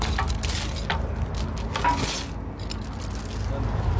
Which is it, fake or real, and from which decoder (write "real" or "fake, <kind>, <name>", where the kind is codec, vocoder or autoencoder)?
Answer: real